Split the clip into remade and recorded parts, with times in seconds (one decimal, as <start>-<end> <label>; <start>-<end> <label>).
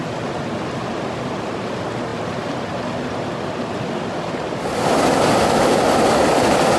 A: 0.0-6.8 recorded